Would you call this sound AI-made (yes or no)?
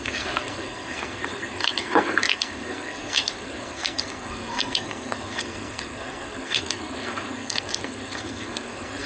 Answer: yes